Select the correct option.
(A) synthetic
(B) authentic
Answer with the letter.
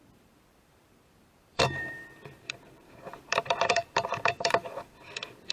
A